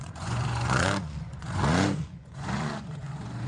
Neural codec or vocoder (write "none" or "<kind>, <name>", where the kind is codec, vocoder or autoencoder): vocoder, Vocos